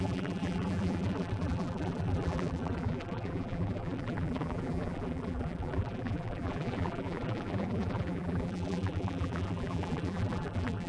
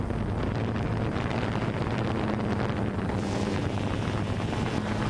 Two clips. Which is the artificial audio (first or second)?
first